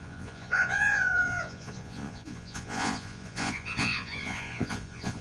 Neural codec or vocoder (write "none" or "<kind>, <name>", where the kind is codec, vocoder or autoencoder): vocoder, Vocos